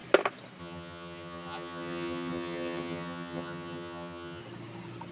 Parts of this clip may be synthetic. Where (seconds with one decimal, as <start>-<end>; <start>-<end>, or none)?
0.6-4.4